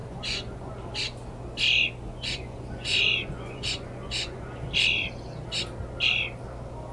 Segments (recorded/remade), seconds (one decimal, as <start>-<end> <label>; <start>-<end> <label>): 0.0-0.7 remade; 0.7-2.1 recorded; 2.1-4.7 remade; 4.7-6.9 recorded